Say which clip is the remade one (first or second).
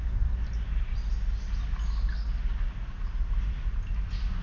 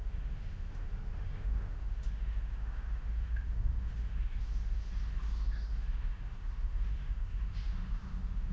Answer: second